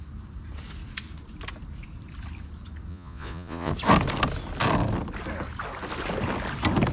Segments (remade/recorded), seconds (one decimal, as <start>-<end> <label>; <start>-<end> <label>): 0.0-2.9 recorded; 2.9-3.7 remade; 3.7-6.9 recorded